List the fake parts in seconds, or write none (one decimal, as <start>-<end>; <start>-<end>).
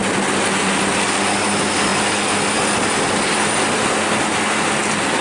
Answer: none